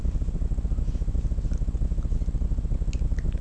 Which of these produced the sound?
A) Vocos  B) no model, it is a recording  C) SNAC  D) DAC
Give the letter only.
B